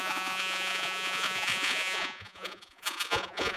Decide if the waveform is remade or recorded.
remade